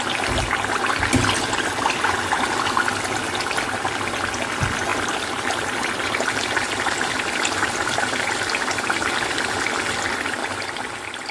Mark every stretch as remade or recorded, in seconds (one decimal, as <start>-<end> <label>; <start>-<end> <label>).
0.0-4.9 recorded; 4.9-9.4 remade; 9.4-11.3 recorded